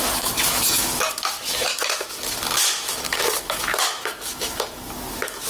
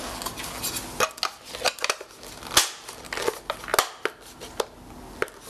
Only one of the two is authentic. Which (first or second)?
second